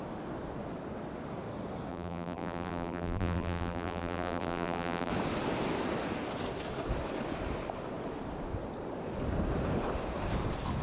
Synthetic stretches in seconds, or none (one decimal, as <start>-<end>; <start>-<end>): 1.9-5.1